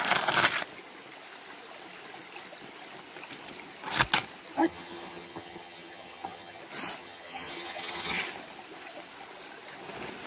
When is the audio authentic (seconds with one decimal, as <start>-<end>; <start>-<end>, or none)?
0.0-4.6; 6.6-7.0; 8.2-10.3